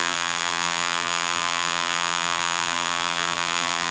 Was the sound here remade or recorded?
remade